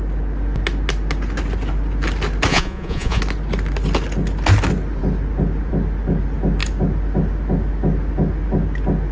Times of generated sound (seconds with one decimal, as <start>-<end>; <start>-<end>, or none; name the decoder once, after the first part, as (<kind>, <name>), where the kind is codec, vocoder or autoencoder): 2.5-3.2 (vocoder, Vocos)